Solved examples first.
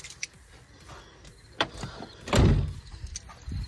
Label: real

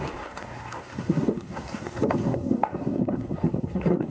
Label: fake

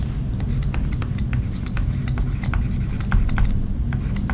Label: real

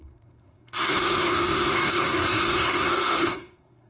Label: fake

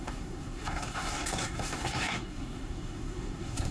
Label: fake